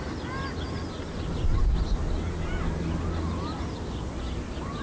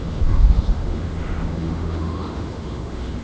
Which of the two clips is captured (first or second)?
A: first